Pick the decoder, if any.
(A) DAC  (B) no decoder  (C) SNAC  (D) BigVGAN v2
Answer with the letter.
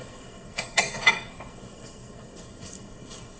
C